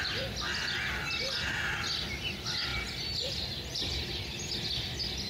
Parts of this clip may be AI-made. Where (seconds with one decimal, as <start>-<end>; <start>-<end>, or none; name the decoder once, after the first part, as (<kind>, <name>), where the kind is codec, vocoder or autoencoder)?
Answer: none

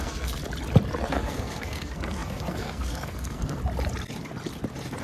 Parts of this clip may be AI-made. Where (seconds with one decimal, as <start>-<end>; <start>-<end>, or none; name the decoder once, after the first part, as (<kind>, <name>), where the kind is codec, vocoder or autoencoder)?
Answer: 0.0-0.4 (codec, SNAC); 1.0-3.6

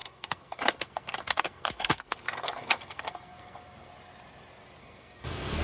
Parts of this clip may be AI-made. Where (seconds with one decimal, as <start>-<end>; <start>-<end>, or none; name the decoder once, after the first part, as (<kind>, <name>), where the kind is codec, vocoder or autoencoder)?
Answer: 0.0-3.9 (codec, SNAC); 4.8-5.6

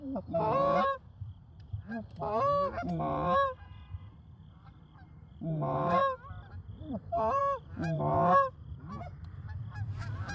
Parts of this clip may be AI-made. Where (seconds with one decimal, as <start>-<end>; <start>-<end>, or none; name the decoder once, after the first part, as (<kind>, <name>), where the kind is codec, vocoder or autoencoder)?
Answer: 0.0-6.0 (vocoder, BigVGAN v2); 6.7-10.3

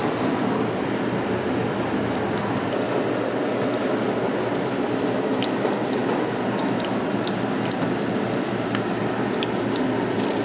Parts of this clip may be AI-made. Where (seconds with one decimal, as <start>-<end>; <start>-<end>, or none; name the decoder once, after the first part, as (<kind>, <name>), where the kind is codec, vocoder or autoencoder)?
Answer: 0.0-1.6 (vocoder, BigVGAN v2); 4.9-6.0; 8.1-10.4